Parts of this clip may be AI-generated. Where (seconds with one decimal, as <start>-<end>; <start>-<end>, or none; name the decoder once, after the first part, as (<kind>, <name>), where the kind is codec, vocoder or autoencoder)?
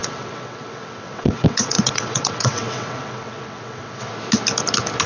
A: 0.0-4.1 (vocoder, WaveNeXt)